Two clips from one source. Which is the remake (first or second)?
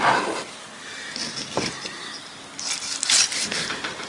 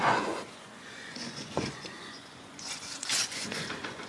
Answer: second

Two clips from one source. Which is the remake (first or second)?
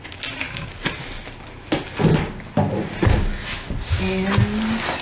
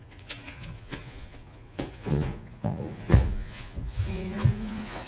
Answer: second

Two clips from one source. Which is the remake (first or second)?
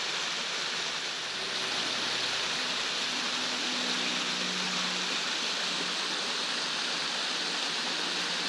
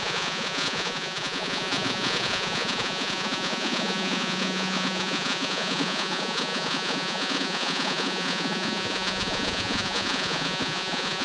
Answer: second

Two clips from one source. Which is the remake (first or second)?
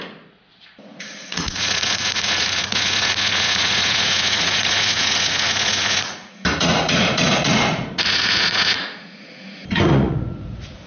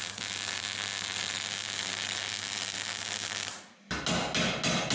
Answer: first